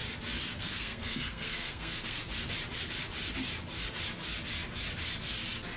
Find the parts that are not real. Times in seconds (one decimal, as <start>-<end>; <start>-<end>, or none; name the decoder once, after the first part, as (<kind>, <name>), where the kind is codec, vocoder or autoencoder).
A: 0.6-2.2 (codec, SNAC)